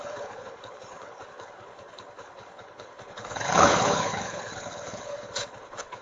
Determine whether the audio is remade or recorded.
remade